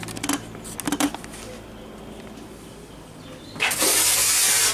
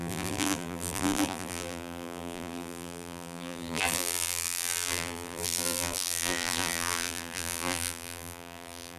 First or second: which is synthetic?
second